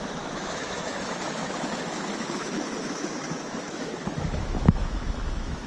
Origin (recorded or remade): remade